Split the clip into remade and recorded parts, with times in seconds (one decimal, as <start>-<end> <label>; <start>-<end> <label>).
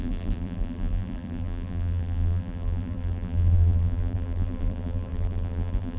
0.0-6.0 remade